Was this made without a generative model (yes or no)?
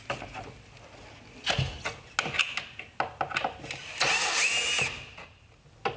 yes